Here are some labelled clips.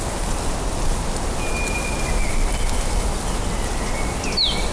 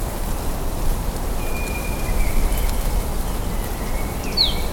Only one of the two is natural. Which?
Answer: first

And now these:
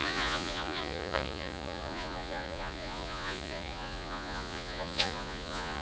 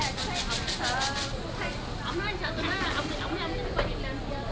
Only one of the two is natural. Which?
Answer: second